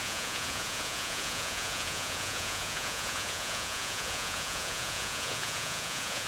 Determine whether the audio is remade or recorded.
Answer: remade